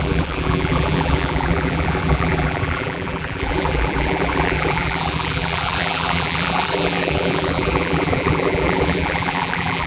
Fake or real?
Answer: fake